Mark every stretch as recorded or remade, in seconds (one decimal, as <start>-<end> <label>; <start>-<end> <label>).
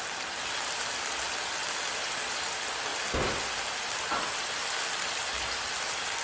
0.0-2.9 recorded; 2.9-4.6 remade; 4.6-6.2 recorded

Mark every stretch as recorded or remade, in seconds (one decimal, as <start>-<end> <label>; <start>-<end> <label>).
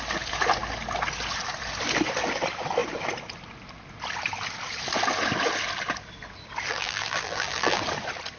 0.0-6.7 recorded; 6.7-7.8 remade; 7.8-8.4 recorded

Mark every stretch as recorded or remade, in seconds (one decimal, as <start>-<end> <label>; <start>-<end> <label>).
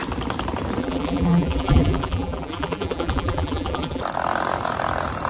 0.0-0.8 recorded; 0.8-4.0 remade; 4.0-5.3 recorded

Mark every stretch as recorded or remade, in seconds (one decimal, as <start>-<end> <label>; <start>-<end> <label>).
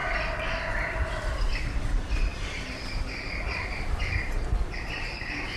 0.0-1.6 recorded; 1.6-5.6 remade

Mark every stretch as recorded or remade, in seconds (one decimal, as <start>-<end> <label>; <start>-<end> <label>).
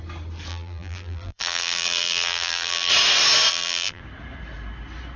0.0-0.5 recorded; 0.5-2.9 remade; 2.9-3.5 recorded; 3.5-4.0 remade; 4.0-5.2 recorded